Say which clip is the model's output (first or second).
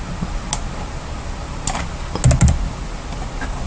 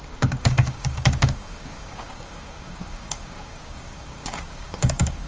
second